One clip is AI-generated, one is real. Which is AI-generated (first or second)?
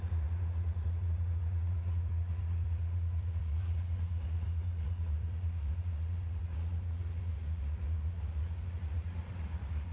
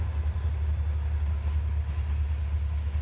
first